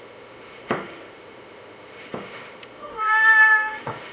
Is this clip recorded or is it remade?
remade